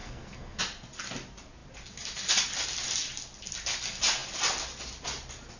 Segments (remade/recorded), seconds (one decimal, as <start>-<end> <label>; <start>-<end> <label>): 0.0-0.6 remade; 0.6-5.6 recorded